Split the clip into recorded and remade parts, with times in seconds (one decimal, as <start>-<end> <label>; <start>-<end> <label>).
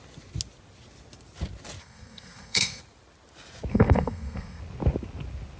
0.0-1.8 recorded; 1.8-2.8 remade; 2.8-3.7 recorded; 3.7-4.6 remade; 4.6-5.6 recorded